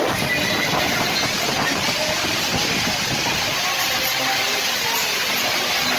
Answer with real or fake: real